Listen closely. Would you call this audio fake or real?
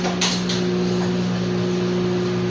real